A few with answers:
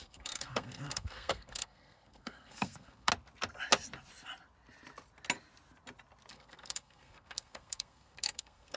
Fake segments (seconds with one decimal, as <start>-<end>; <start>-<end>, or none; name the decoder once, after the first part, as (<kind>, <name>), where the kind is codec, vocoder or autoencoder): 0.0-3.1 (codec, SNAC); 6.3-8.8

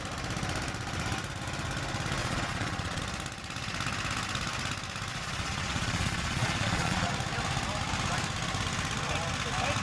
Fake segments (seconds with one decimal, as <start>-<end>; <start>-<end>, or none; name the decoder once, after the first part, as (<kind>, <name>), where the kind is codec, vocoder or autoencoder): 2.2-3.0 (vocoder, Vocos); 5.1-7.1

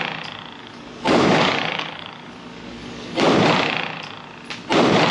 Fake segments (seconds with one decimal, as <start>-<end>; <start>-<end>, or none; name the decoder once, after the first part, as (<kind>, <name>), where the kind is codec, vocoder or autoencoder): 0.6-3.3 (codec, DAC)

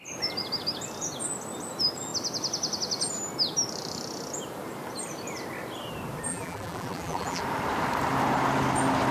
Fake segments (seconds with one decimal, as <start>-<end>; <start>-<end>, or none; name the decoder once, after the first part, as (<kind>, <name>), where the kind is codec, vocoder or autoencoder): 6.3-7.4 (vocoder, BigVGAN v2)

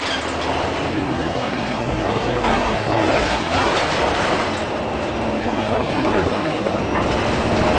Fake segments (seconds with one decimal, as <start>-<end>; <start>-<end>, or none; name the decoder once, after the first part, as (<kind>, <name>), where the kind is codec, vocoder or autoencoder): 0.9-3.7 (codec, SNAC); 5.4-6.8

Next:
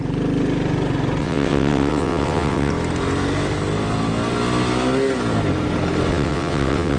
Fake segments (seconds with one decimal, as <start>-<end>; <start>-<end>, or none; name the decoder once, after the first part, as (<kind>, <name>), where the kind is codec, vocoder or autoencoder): 1.2-2.7 (vocoder, WaveNeXt); 6.1-7.0